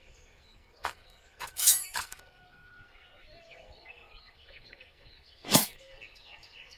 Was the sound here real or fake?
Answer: fake